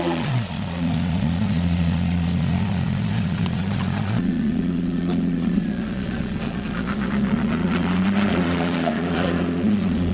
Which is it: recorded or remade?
remade